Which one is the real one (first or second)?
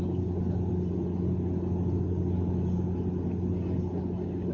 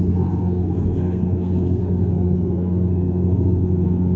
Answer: first